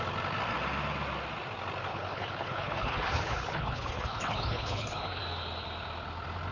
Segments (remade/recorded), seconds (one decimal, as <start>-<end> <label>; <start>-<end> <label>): 0.0-1.9 recorded; 1.9-5.2 remade; 5.2-6.5 recorded